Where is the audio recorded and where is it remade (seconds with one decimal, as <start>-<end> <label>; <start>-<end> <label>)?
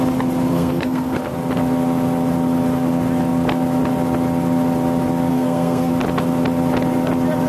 0.0-0.5 recorded; 0.5-1.2 remade; 1.2-5.3 recorded; 5.3-5.9 remade; 5.9-7.5 recorded